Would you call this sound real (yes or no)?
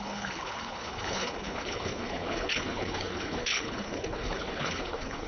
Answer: no